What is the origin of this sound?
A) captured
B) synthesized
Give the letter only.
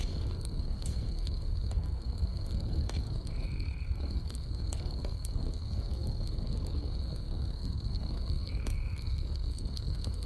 B